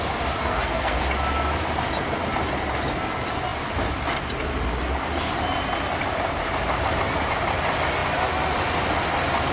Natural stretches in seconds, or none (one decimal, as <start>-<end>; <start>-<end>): 0.0-0.4; 1.0-9.5